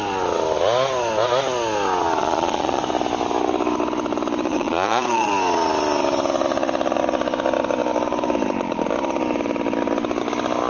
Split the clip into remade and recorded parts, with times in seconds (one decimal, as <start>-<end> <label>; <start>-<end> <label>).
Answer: 0.0-2.2 recorded; 2.2-2.8 remade; 2.8-4.5 recorded; 4.5-5.3 remade; 5.3-10.7 recorded